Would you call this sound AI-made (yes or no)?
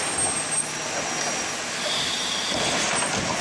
no